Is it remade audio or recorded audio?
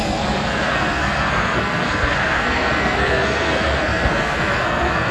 remade